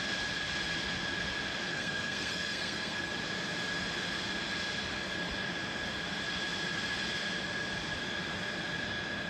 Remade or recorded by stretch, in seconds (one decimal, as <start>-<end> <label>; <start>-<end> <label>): 0.0-1.7 recorded; 1.7-3.1 remade; 3.1-9.3 recorded